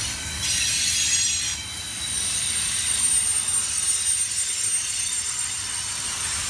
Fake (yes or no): no